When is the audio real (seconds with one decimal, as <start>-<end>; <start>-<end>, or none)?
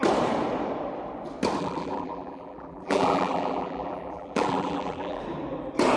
0.0-1.6; 5.2-6.0